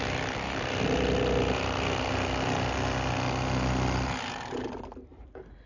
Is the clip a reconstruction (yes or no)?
no